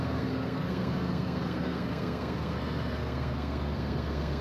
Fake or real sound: fake